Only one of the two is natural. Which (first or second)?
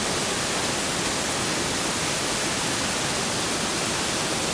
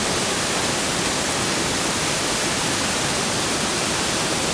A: first